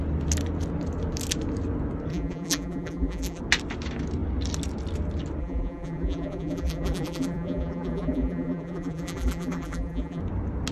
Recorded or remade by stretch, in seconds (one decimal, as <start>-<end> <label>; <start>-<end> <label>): 0.0-2.1 recorded; 2.1-3.4 remade; 3.4-5.4 recorded; 5.4-10.2 remade; 10.2-10.7 recorded